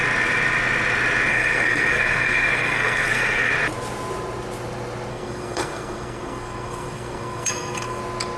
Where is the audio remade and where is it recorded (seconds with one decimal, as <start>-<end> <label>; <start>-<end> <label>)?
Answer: 0.0-1.3 recorded; 1.3-3.5 remade; 3.5-5.1 recorded; 5.1-8.0 remade; 8.0-8.4 recorded